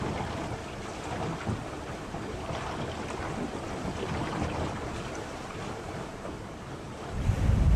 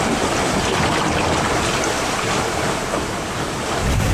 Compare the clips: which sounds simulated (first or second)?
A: first